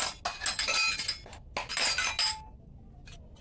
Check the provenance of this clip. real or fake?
real